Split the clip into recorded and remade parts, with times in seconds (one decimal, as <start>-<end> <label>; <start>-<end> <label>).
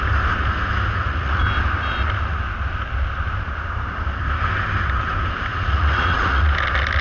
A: 0.0-0.9 recorded; 0.9-1.4 remade; 1.4-5.5 recorded; 5.5-6.5 remade; 6.5-7.0 recorded